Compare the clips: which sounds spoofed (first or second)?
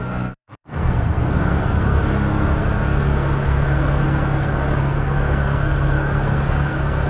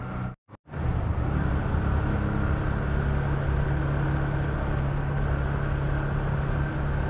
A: first